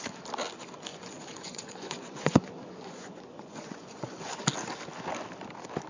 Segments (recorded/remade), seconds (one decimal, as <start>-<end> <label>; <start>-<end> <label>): 0.0-0.9 recorded; 0.9-4.4 remade; 4.4-5.9 recorded